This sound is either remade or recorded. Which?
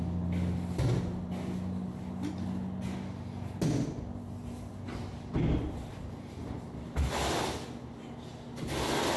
recorded